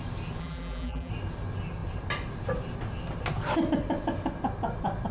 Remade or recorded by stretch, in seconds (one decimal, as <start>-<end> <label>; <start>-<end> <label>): 0.0-0.4 recorded; 0.4-1.1 remade; 1.1-5.1 recorded